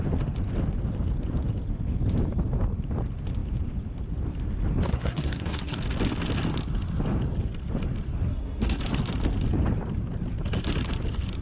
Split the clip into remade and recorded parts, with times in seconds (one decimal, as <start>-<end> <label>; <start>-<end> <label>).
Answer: 0.0-4.9 recorded; 4.9-5.8 remade; 5.8-8.3 recorded; 8.3-8.8 remade; 8.8-11.4 recorded